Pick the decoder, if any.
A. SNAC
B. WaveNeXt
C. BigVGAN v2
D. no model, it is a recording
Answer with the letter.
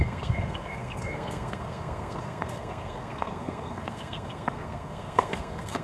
A